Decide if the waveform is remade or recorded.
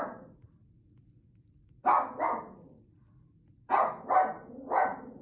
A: recorded